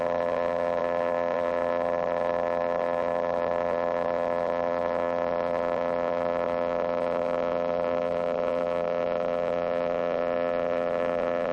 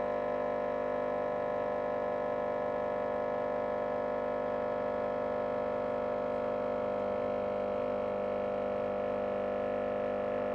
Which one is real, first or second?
second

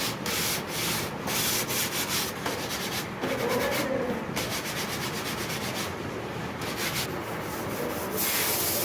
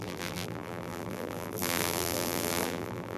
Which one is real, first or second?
first